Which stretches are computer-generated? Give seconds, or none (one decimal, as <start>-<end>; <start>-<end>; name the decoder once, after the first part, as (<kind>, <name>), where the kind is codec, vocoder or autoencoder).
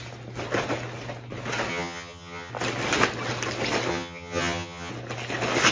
1.7-2.5 (vocoder, HiFi-GAN); 3.9-4.9